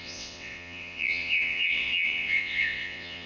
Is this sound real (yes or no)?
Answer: no